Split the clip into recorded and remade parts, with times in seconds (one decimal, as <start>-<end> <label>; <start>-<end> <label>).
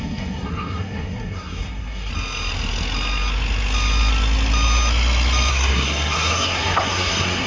0.0-2.1 remade; 2.1-5.5 recorded; 5.5-7.5 remade